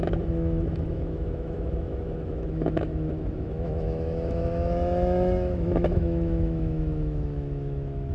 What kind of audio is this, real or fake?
fake